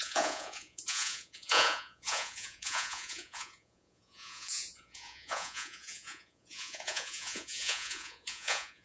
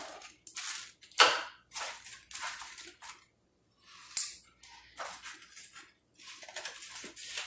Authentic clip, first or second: second